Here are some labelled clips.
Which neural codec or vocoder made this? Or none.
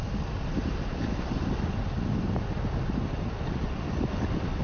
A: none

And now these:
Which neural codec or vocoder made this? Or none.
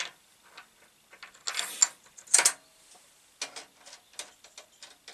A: none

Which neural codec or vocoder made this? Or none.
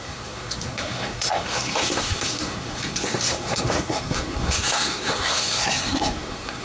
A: codec, SNAC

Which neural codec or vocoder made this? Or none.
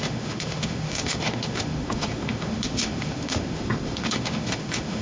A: autoencoder, DAC-VAE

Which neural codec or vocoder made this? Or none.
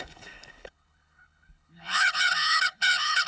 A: codec, HILCodec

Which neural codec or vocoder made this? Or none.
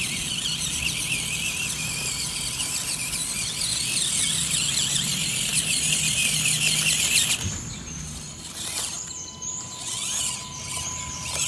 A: none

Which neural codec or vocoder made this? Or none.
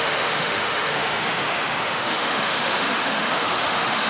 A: autoencoder, DAC-VAE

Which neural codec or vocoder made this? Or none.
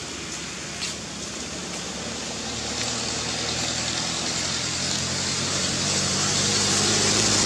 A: none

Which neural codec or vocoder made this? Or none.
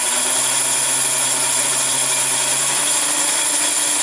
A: none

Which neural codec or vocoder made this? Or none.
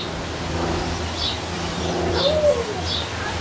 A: none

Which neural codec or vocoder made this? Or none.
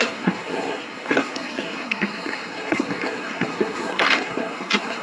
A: codec, SNAC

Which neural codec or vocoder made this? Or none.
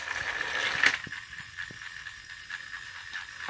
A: none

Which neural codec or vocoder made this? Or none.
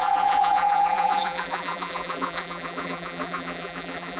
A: vocoder, BigVGAN v2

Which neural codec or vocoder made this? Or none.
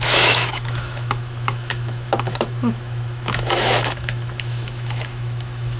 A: autoencoder, DAC-VAE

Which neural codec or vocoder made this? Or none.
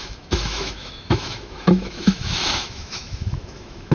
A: autoencoder, DAC-VAE